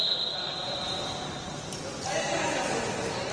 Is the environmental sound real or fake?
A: real